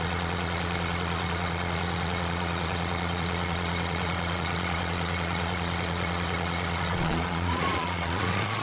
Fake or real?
fake